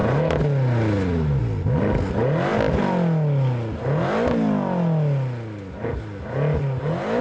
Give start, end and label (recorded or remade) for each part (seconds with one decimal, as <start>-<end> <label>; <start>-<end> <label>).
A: 0.0-7.2 recorded

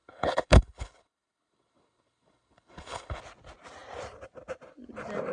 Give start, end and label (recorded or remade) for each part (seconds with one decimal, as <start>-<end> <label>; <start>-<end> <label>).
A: 0.0-3.2 remade; 3.2-5.3 recorded

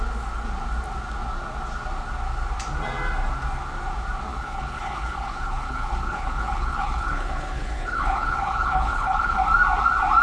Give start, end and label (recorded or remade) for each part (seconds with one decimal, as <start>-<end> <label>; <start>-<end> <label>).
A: 0.0-4.3 recorded; 4.3-9.4 remade; 9.4-10.2 recorded

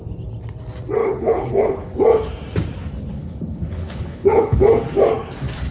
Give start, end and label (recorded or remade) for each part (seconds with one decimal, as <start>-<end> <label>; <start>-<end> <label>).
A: 0.0-1.0 recorded; 1.0-1.9 remade; 1.9-3.1 recorded; 3.1-4.6 remade; 4.6-5.7 recorded

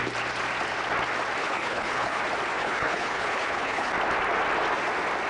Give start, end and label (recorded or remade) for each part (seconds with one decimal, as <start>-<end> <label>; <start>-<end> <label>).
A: 0.0-1.4 recorded; 1.4-2.2 remade; 2.2-2.6 recorded; 2.6-3.9 remade; 3.9-5.3 recorded

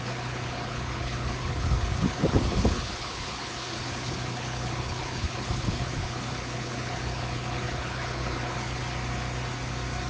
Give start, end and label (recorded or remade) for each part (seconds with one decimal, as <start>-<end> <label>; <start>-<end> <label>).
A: 0.0-8.8 remade; 8.8-10.1 recorded